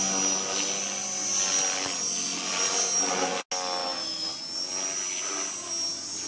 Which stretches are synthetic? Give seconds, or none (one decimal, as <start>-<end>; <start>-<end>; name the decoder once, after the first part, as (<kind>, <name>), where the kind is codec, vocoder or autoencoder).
3.8-4.3 (autoencoder, DAC-VAE)